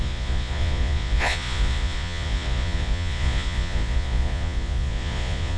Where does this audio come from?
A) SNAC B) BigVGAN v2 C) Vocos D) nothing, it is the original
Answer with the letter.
C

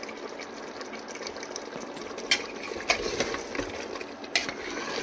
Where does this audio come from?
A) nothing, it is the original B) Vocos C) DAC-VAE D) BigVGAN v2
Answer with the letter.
A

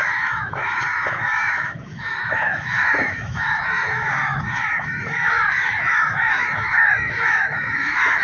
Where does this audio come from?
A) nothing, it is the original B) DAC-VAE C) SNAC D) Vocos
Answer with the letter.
B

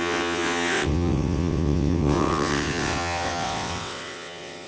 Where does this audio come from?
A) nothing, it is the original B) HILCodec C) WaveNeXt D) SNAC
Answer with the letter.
C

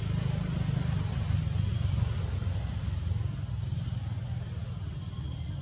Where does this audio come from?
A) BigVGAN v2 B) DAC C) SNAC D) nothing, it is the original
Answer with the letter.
D